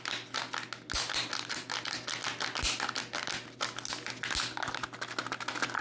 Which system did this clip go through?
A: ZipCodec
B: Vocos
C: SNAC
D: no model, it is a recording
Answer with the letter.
D